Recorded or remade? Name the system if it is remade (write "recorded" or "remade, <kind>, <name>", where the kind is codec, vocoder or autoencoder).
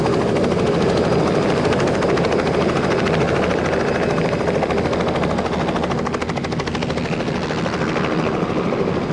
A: recorded